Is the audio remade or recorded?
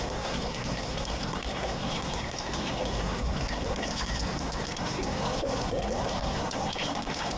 remade